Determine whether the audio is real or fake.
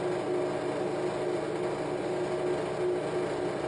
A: real